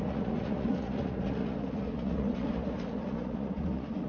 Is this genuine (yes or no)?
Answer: no